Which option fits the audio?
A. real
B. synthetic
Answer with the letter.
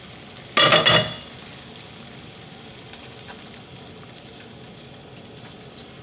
A